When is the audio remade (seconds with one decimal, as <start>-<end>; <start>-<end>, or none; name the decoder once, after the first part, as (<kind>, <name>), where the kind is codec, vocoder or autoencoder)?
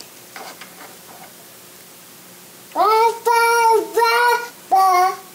3.9-4.5 (vocoder, BigVGAN v2)